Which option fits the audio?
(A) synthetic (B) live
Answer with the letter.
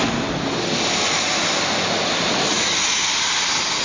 B